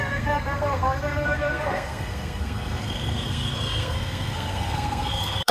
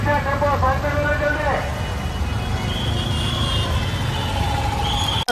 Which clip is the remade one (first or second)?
first